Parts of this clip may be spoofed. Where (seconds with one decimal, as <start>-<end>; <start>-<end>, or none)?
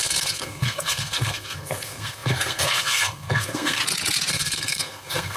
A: 0.0-3.8; 4.3-5.4